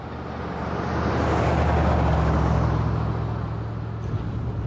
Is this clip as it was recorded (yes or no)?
yes